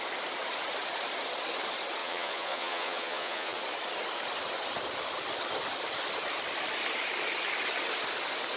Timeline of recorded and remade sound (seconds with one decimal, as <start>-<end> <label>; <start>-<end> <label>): 0.0-2.0 recorded; 2.0-3.6 remade; 3.6-8.6 recorded

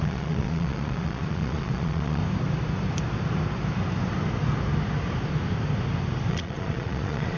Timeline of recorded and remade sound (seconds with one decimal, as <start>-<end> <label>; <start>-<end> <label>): 0.0-2.2 remade; 2.2-6.3 recorded; 6.3-7.4 remade

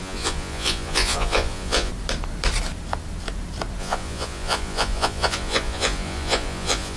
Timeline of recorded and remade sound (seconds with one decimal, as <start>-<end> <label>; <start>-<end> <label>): 0.0-1.9 remade; 1.9-3.8 recorded; 3.8-7.0 remade